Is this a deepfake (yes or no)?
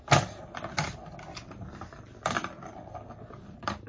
no